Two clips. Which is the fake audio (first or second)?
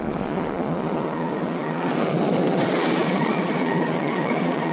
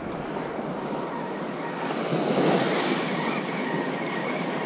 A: first